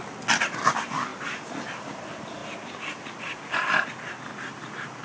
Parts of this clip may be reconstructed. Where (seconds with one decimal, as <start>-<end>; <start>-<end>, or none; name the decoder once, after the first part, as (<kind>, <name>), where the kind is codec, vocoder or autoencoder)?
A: none